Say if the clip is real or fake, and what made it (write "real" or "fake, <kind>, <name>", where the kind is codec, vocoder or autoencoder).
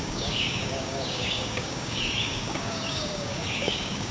fake, codec, DAC